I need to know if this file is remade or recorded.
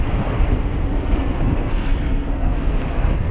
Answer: remade